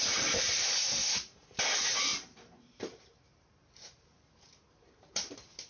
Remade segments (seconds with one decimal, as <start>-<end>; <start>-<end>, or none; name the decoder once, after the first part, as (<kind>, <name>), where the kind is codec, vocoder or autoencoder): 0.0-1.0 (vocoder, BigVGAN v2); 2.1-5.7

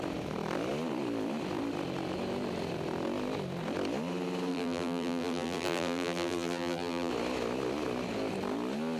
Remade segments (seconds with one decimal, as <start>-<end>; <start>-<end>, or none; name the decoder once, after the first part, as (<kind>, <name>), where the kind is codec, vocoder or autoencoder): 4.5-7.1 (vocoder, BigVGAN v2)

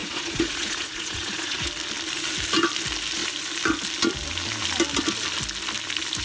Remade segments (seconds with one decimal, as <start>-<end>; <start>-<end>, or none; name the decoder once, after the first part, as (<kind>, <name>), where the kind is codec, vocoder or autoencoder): 0.0-1.7 (vocoder, Vocos)

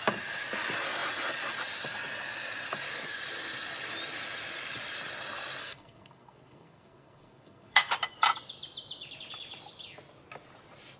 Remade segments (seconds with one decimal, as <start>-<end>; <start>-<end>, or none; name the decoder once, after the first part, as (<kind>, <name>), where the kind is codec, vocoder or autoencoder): 5.6-7.9 (codec, SNAC)

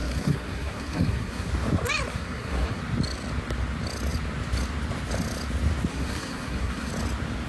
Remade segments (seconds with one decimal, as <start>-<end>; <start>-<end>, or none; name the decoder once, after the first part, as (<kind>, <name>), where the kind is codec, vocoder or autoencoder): 0.0-1.5 (codec, SNAC); 2.1-2.8; 5.9-6.9

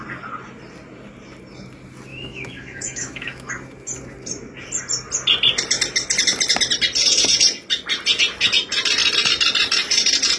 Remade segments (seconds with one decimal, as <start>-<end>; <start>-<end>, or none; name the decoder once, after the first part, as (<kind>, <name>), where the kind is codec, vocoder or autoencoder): 2.1-3.5 (autoencoder, DAC-VAE)